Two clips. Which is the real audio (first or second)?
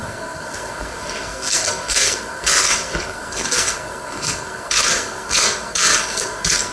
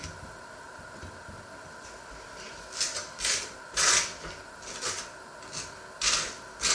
second